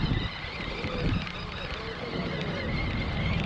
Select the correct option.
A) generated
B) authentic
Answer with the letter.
B